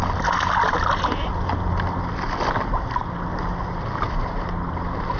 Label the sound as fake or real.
real